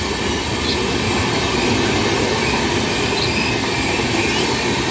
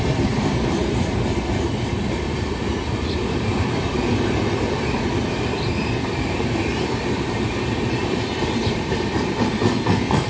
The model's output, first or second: second